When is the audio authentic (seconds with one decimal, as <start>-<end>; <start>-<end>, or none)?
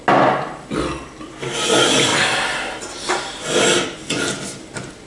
0.0-5.1